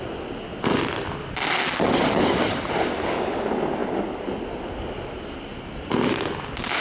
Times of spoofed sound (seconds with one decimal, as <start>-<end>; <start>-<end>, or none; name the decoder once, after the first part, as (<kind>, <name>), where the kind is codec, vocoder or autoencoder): none